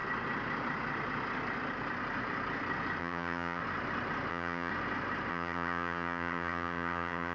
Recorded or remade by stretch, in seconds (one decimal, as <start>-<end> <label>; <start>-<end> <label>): 0.0-3.0 recorded; 3.0-3.6 remade; 3.6-4.3 recorded; 4.3-4.7 remade; 4.7-5.3 recorded; 5.3-7.3 remade